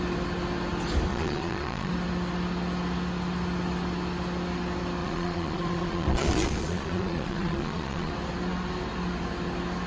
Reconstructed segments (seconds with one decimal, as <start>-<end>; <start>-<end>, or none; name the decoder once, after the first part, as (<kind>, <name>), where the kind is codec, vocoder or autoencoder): 1.1-1.9 (vocoder, Vocos); 5.0-8.1